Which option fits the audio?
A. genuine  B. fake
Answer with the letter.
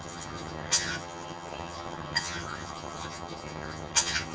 B